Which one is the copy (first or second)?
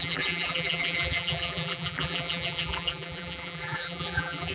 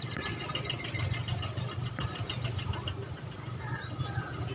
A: first